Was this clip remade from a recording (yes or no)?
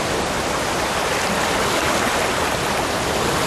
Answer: no